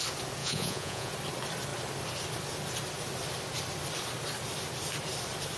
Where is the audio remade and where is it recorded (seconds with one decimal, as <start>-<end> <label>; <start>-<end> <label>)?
0.0-0.4 recorded; 0.4-1.1 remade; 1.1-5.6 recorded